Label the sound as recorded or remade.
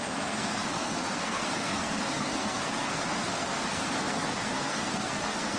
remade